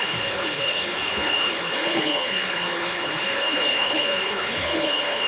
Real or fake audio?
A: fake